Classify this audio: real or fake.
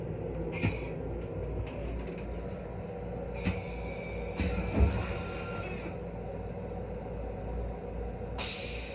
real